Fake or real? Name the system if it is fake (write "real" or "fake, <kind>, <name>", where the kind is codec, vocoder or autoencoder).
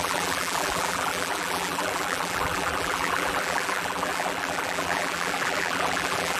fake, vocoder, BigVGAN v2